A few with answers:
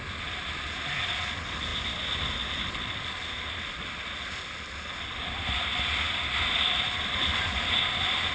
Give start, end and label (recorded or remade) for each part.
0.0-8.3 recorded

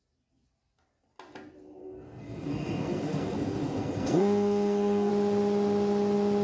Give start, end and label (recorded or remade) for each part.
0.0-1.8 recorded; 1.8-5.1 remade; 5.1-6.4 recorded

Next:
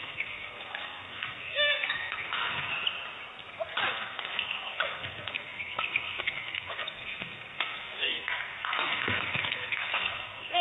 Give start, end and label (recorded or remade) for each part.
0.0-2.7 remade; 2.7-3.9 recorded; 3.9-10.6 remade